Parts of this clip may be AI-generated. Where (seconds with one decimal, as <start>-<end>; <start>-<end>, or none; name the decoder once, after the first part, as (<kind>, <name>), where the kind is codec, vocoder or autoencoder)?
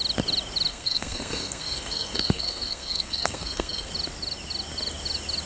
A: 0.7-3.9 (codec, SNAC)